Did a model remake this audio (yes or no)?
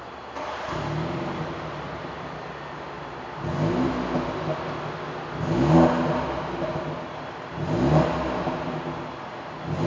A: no